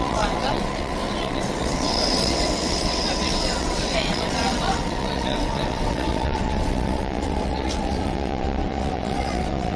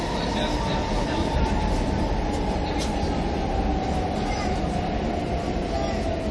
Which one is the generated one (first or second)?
first